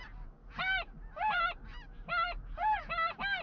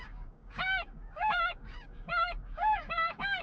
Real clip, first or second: first